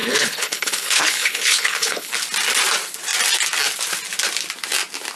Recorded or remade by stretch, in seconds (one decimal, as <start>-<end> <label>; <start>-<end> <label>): 0.0-2.1 remade; 2.1-5.2 recorded